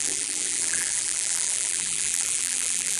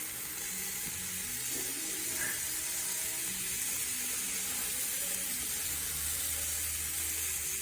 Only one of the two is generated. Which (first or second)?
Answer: first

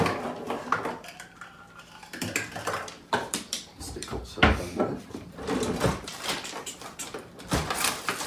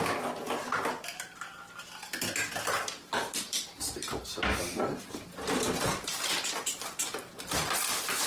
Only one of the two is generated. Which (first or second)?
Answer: first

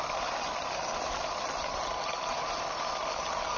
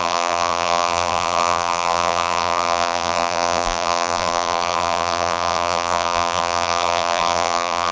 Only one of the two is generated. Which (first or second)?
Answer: second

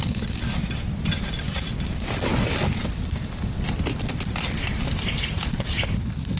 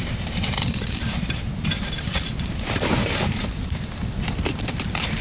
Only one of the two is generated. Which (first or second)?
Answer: second